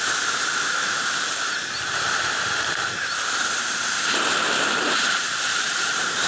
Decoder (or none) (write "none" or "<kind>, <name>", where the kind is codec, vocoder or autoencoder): vocoder, BigVGAN v2